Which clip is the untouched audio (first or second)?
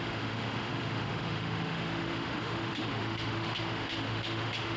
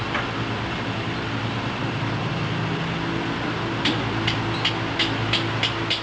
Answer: second